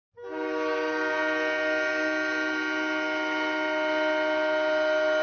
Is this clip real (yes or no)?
yes